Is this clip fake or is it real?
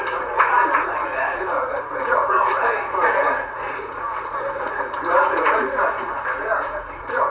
fake